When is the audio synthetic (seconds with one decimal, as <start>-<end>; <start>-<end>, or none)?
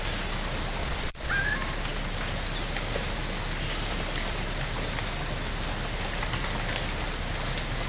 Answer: 0.8-1.3